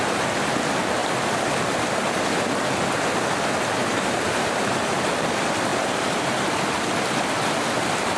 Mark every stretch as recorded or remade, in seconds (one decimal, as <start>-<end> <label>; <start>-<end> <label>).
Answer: 0.0-3.9 recorded; 3.9-4.7 remade; 4.7-5.7 recorded; 5.7-6.5 remade; 6.5-8.2 recorded